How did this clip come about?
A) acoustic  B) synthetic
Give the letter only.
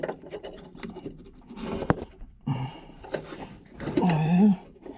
A